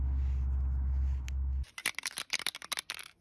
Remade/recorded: recorded